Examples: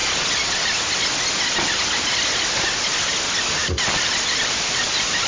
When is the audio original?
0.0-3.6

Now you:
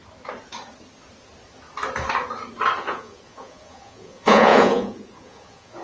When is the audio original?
0.0-2.8

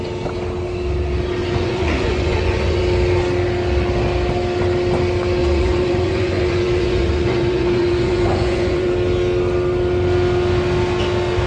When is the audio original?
0.0-1.4; 2.8-5.4; 8.9-11.5

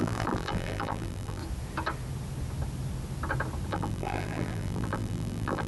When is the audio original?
1.4-3.7

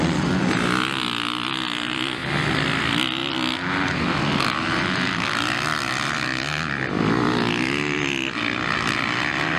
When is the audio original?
0.0-9.6

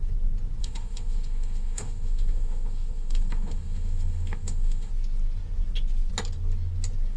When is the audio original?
0.0-0.6; 4.9-7.2

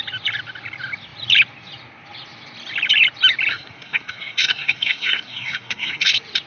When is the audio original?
0.0-3.5; 6.1-6.5

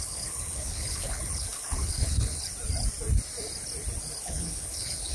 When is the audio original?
2.5-4.2